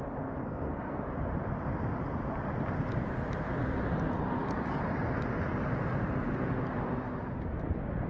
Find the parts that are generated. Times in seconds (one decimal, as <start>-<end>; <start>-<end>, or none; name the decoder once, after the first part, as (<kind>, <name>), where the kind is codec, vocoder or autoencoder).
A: 0.4-1.0 (codec, SNAC)